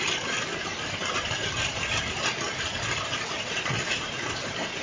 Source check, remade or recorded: recorded